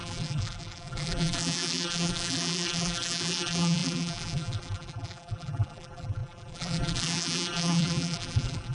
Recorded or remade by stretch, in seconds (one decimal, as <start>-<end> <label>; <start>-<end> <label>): 0.0-8.7 remade